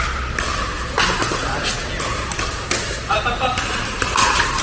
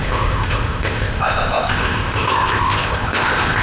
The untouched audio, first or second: first